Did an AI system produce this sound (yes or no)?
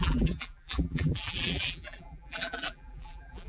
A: yes